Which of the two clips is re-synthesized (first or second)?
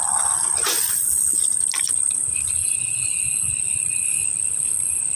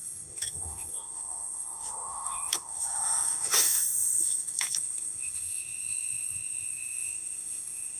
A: second